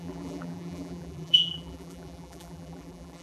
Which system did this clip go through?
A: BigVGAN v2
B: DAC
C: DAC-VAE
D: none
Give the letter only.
A